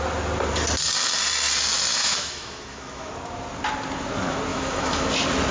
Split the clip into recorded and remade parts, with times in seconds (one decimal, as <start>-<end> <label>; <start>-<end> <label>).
0.0-1.9 recorded; 1.9-3.1 remade; 3.1-4.5 recorded; 4.5-5.1 remade; 5.1-5.5 recorded